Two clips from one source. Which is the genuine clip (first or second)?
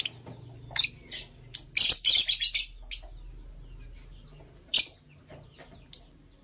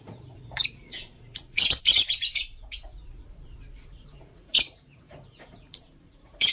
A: first